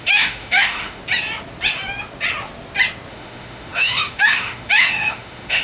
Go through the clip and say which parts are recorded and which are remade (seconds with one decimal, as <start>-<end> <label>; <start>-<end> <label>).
0.0-1.0 remade; 1.0-3.1 recorded; 3.1-5.6 remade